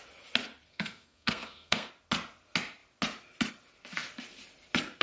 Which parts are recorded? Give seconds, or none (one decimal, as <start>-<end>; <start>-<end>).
0.0-0.7; 1.9-5.0